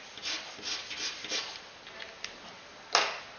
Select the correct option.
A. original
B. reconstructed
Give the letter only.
A